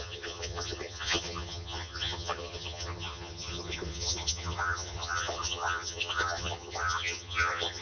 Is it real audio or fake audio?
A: fake